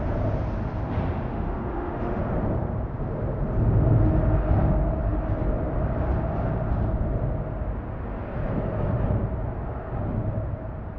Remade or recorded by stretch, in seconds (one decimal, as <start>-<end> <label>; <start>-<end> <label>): 0.0-1.3 recorded; 1.3-2.2 remade; 2.2-11.0 recorded